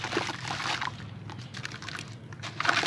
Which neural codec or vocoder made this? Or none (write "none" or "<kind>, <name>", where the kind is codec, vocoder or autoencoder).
none